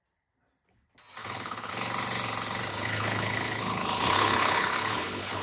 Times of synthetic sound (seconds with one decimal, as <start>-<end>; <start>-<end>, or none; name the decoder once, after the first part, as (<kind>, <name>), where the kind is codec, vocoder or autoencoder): 1.2-1.7 (codec, HILCodec); 2.7-5.4